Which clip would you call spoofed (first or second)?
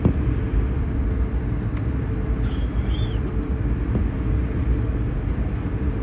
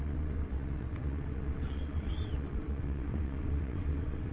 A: second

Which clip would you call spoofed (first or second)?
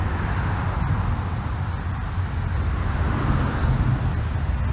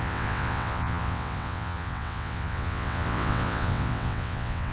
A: second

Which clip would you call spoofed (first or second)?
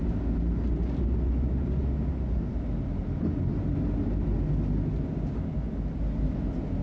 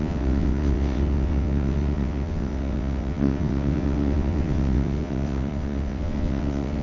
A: second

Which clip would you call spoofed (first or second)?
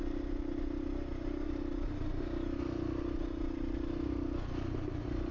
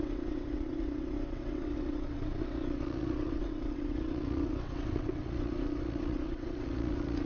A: second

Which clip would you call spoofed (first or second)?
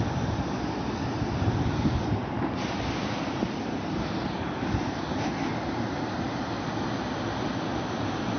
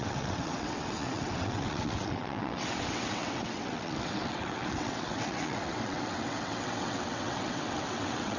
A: second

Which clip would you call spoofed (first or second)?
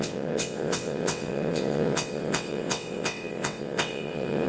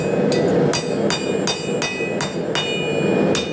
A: first